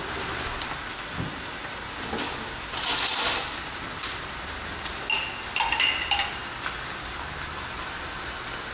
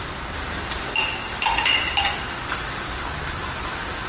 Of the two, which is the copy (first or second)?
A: second